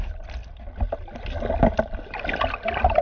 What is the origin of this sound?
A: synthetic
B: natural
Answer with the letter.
B